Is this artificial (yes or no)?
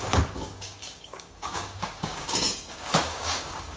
yes